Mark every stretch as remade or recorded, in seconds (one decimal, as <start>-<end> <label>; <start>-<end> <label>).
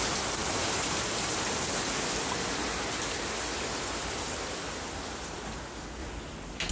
0.0-0.4 recorded; 0.4-1.6 remade; 1.6-3.5 recorded; 3.5-5.5 remade; 5.5-6.0 recorded; 6.0-6.7 remade